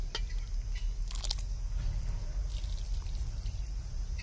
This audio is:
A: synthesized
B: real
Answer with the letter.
B